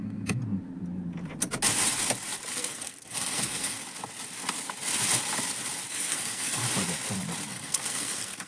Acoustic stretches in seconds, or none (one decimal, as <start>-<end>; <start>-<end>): 0.4-2.5; 3.8-5.9; 6.6-7.5